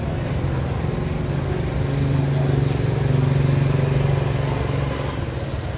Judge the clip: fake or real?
real